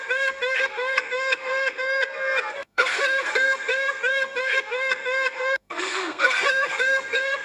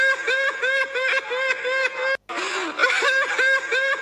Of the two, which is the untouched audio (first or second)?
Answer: second